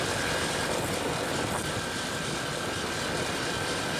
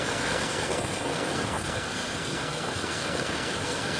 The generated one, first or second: second